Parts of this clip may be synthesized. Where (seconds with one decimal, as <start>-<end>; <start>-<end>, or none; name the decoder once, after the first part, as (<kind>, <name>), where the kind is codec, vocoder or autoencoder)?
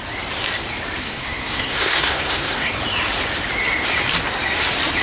1.0-2.8 (codec, SNAC)